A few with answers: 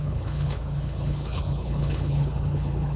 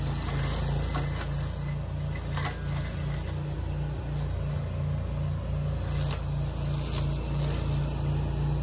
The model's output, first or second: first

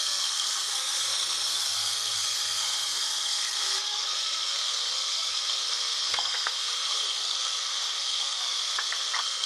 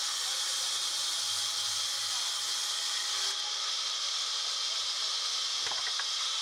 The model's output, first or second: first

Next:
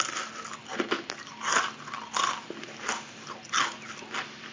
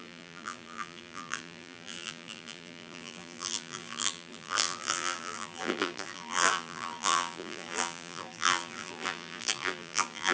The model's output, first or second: second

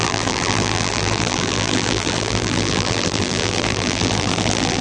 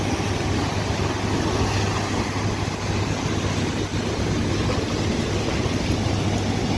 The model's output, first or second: first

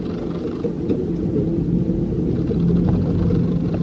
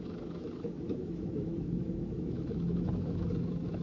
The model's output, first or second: second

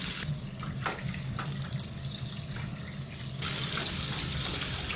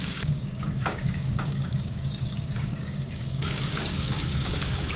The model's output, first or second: second